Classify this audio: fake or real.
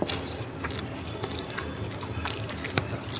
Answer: real